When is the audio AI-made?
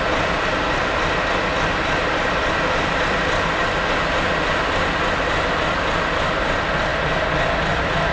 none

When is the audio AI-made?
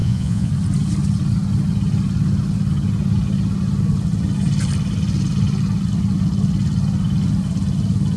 0.0-0.5 (vocoder, Vocos)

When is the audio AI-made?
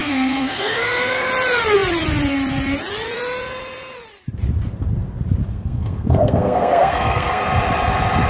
0.0-1.3 (codec, SNAC); 5.5-7.4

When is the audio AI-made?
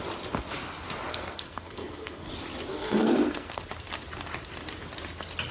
1.1-2.3 (codec, SNAC); 2.7-3.6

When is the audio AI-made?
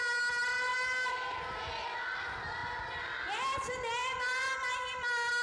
none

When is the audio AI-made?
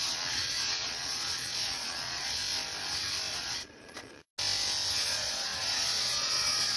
0.0-2.4 (vocoder, Vocos); 3.3-4.3; 4.9-6.8